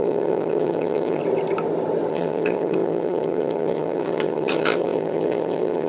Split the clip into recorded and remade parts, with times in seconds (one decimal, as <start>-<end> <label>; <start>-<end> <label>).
0.0-1.2 remade; 1.2-2.1 recorded; 2.1-5.9 remade